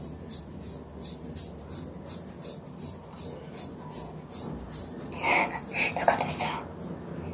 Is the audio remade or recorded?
recorded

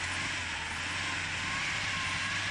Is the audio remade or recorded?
recorded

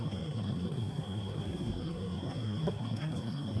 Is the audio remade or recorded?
remade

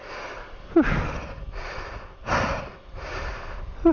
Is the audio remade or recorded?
recorded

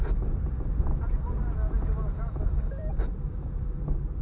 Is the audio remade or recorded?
remade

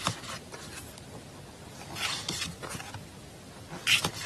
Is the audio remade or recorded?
recorded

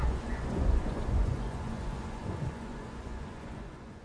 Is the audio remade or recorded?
remade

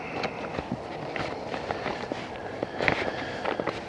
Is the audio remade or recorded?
recorded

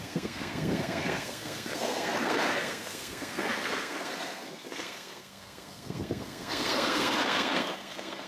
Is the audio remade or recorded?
remade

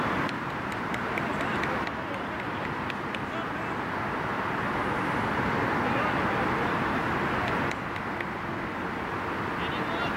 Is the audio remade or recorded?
recorded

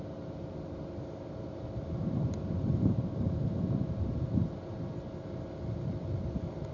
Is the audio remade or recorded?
recorded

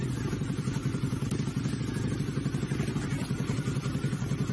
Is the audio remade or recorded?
recorded